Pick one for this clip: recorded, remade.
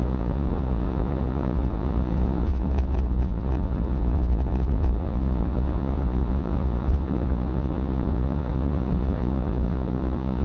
remade